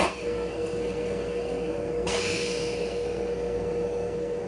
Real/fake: fake